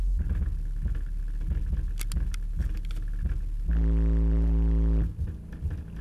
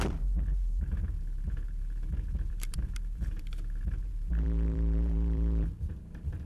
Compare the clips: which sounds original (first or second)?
first